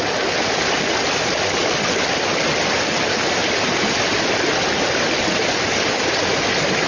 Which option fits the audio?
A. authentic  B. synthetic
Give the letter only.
A